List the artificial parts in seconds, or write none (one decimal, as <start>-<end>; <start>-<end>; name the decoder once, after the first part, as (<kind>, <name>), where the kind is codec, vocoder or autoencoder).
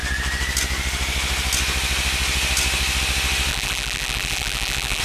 3.5-5.0 (vocoder, BigVGAN v2)